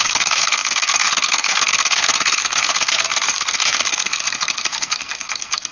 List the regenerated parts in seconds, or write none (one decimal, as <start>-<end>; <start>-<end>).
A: 0.0-5.7